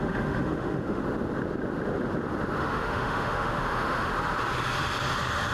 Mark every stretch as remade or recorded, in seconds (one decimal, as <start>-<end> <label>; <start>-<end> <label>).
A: 0.0-1.0 remade; 1.0-2.6 recorded; 2.6-4.1 remade; 4.1-5.5 recorded